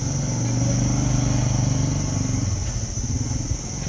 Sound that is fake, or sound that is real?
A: real